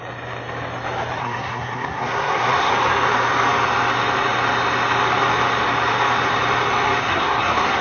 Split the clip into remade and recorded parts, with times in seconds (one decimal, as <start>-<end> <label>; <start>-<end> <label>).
0.0-1.2 recorded; 1.2-2.7 remade; 2.7-7.0 recorded; 7.0-7.8 remade